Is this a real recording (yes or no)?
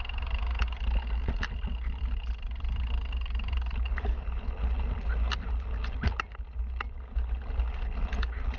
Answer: yes